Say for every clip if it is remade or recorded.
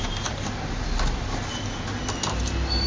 recorded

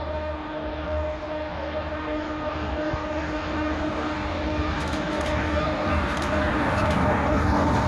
remade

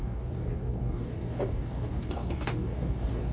remade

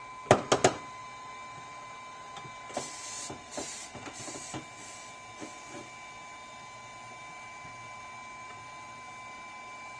recorded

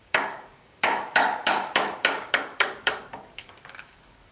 remade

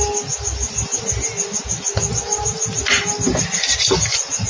recorded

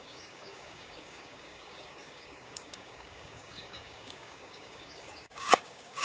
remade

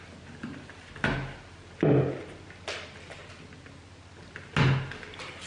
recorded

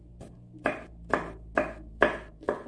recorded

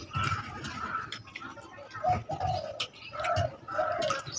recorded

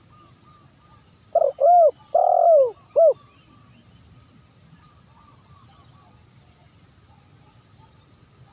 recorded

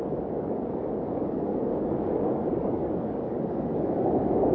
remade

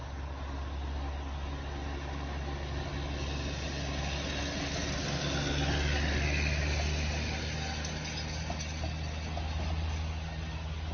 recorded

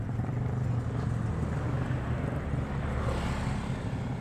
recorded